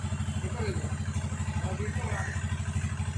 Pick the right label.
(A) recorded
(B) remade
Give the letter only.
A